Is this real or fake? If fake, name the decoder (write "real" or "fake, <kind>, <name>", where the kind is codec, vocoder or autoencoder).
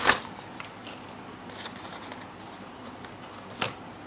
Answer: real